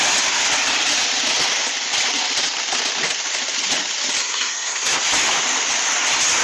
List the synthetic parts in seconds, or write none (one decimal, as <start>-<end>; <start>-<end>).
4.2-5.0